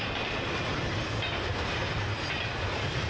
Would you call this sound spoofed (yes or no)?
no